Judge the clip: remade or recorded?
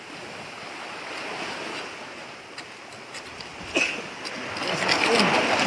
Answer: recorded